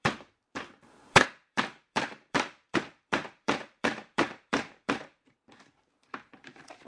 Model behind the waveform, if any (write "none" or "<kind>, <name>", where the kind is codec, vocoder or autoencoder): vocoder, BigVGAN v2